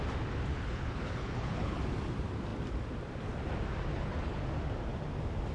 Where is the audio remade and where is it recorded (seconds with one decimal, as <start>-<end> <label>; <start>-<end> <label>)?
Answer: 0.0-0.5 recorded; 0.5-1.8 remade; 1.8-3.9 recorded; 3.9-4.4 remade; 4.4-5.5 recorded